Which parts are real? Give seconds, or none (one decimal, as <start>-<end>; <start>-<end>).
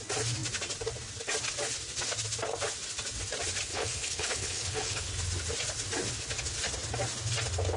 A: 0.0-3.7; 5.1-7.8